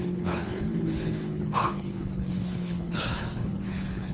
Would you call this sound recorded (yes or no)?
no